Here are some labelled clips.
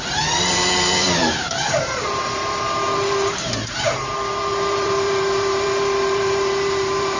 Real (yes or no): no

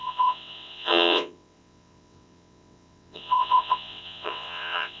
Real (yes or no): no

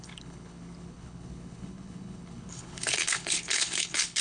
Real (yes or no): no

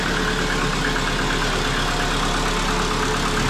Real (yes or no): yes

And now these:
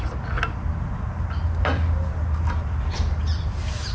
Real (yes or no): yes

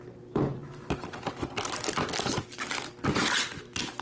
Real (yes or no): yes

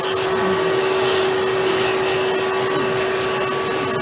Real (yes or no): yes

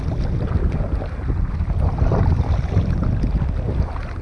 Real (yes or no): yes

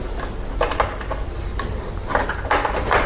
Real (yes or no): yes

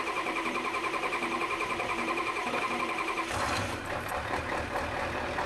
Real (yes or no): no